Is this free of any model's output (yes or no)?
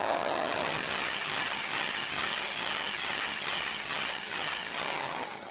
no